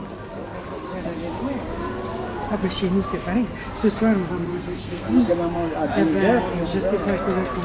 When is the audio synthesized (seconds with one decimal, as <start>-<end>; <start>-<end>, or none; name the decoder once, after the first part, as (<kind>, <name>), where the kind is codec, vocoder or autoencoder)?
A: 4.5-5.3 (codec, SNAC)